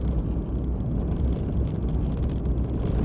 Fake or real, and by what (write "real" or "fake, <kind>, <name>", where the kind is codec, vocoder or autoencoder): real